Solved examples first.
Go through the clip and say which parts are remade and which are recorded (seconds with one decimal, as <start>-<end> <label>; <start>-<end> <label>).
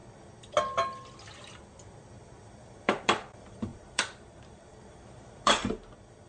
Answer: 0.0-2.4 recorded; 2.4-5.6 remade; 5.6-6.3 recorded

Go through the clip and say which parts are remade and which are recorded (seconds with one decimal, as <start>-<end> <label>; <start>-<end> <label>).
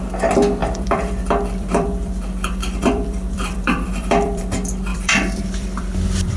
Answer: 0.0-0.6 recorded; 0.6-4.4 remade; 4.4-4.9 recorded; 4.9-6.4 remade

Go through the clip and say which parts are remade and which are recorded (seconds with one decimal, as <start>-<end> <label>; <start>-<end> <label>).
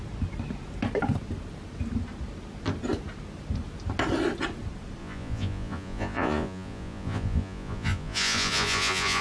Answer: 0.0-5.0 recorded; 5.0-9.2 remade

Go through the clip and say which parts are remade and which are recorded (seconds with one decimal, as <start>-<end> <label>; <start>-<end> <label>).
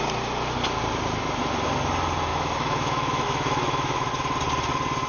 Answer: 0.0-2.3 recorded; 2.3-4.1 remade; 4.1-5.1 recorded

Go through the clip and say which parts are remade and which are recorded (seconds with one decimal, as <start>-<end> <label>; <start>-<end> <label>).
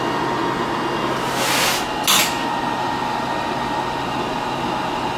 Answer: 0.0-5.2 recorded